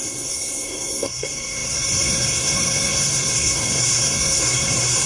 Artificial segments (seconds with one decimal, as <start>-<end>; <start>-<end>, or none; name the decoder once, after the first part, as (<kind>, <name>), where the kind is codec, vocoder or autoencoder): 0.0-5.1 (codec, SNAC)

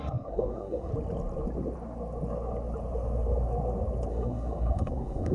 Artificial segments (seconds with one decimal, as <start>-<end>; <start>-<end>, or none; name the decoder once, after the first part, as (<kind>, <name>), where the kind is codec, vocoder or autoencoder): 0.0-0.9 (codec, SNAC); 4.1-5.3

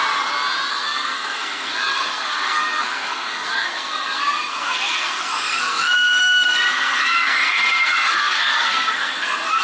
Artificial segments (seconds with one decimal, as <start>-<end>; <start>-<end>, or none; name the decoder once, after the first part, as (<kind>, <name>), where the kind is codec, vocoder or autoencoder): 0.7-9.6 (codec, SNAC)

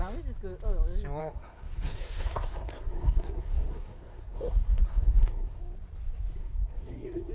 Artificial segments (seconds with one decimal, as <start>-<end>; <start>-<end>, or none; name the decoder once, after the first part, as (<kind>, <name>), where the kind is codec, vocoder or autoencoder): 1.2-5.6 (codec, SNAC); 6.4-7.3